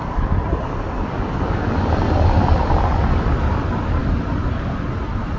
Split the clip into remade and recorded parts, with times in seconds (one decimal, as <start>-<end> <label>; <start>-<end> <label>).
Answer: 0.0-5.4 recorded